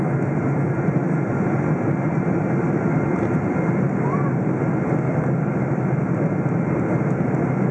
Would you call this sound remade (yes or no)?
no